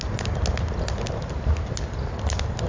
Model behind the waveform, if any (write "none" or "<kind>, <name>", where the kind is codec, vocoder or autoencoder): none